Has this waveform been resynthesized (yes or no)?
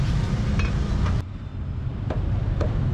no